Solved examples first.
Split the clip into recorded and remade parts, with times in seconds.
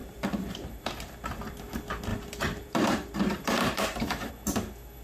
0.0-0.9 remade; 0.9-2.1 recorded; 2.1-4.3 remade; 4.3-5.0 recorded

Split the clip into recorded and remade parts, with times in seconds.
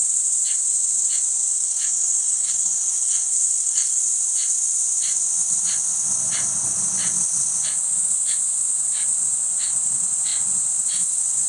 0.0-1.5 recorded; 1.5-4.0 remade; 4.0-11.5 recorded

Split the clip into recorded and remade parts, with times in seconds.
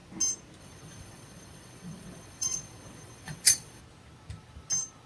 0.0-0.6 recorded; 0.6-3.8 remade; 3.8-5.1 recorded